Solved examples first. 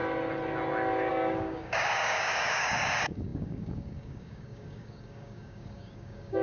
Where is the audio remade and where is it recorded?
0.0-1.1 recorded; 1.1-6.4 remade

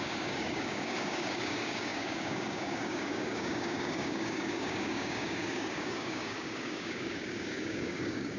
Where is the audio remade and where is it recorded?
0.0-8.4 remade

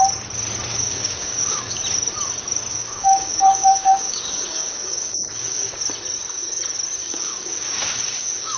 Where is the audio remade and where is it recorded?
0.0-0.7 recorded; 0.7-1.8 remade; 1.8-2.7 recorded; 2.7-5.8 remade; 5.8-7.0 recorded; 7.0-8.6 remade

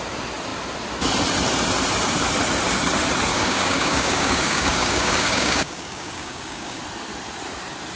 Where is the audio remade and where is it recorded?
0.0-3.3 recorded; 3.3-6.8 remade; 6.8-8.0 recorded